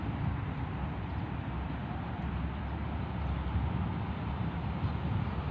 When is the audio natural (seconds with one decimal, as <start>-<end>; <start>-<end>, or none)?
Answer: 1.8-5.1